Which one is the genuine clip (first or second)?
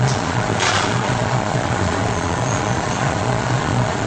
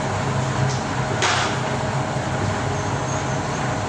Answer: second